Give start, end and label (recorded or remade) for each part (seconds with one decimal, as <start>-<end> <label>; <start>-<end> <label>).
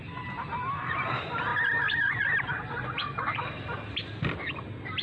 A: 0.0-5.0 recorded